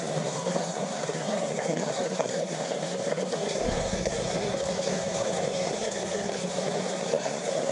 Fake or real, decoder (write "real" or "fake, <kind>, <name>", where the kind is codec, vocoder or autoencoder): fake, codec, SNAC